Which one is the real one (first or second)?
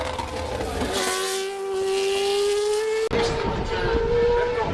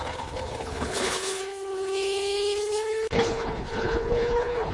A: first